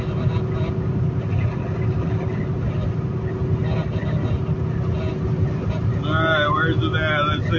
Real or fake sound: real